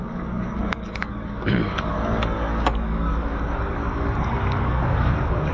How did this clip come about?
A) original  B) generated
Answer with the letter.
B